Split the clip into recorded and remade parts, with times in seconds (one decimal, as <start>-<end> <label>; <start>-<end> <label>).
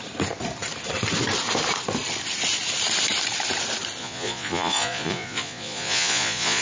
0.0-4.0 recorded; 4.0-6.6 remade